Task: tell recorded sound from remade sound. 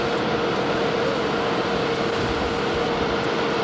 recorded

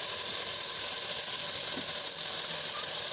recorded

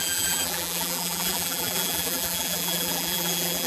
remade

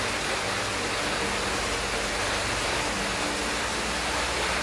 recorded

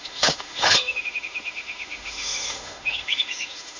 remade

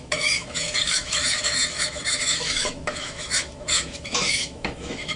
remade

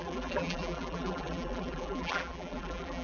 remade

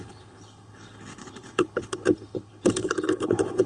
remade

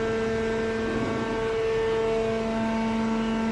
recorded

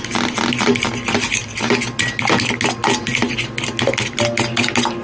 recorded